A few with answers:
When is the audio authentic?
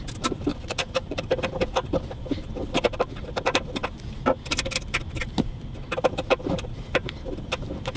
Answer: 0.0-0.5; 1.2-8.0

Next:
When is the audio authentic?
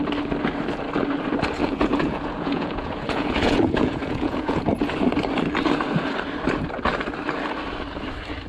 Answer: 0.0-1.6; 4.6-8.5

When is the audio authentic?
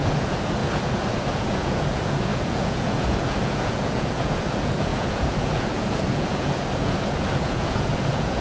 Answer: none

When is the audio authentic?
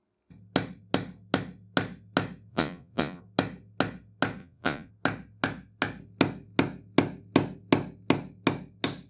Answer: 0.0-2.5; 3.2-4.4; 4.9-9.1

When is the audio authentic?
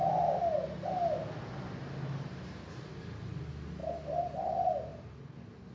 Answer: 0.0-5.7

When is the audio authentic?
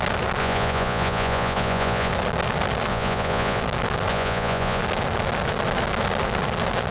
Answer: 0.0-0.4; 2.1-2.9; 3.6-4.1; 4.8-6.9